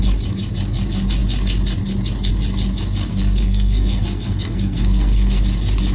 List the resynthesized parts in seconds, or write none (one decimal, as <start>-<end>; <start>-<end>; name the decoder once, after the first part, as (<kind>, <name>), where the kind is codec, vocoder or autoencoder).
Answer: 3.0-5.4 (codec, SNAC)